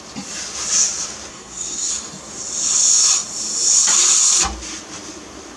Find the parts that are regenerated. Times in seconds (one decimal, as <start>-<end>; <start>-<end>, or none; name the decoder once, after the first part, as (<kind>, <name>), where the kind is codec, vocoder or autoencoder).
1.3-1.9 (codec, SNAC)